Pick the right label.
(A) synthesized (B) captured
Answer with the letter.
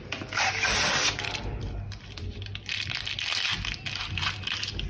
B